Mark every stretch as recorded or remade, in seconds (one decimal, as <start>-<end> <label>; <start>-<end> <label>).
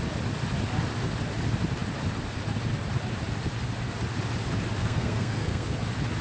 0.0-4.8 recorded; 4.8-5.8 remade; 5.8-6.2 recorded